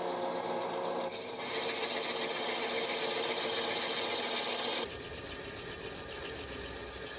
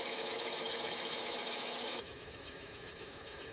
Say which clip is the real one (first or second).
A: first